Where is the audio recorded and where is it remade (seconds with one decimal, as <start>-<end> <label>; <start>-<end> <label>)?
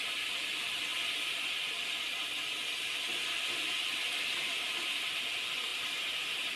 0.0-0.9 remade; 0.9-2.8 recorded; 2.8-5.7 remade; 5.7-6.6 recorded